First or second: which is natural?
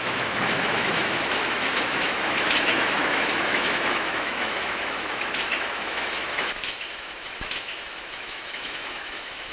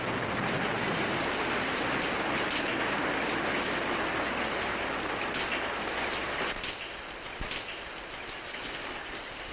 second